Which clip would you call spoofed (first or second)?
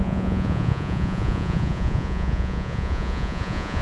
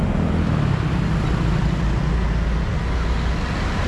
first